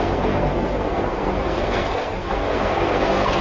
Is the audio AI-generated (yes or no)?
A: yes